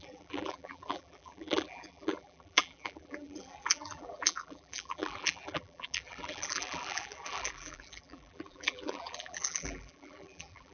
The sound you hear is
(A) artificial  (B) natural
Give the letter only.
A